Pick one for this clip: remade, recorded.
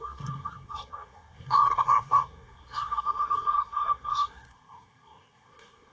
remade